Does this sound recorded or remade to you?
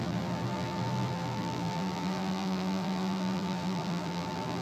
remade